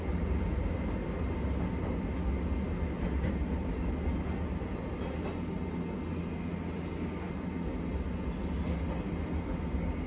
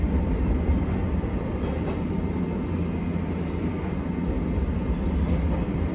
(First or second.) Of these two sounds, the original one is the first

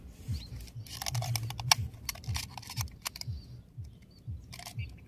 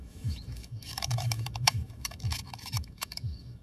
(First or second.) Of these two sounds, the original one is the first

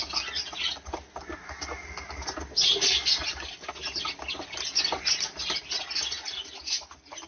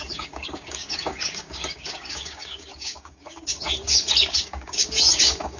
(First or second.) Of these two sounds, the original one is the first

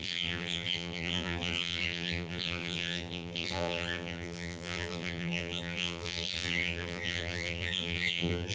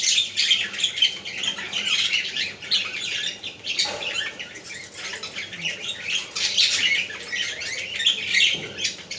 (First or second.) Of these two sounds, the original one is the second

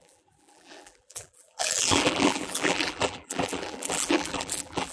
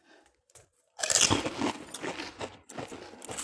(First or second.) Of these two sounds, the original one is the second